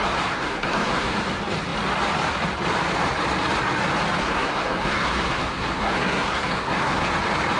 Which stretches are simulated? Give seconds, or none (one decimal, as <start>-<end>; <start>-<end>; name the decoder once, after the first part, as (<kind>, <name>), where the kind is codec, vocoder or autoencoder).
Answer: 0.0-1.2 (codec, SNAC); 4.2-7.1